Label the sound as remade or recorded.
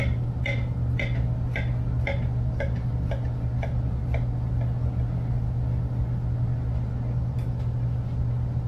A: recorded